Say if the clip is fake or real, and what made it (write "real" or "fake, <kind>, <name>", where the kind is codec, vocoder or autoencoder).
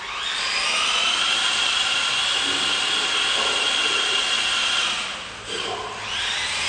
real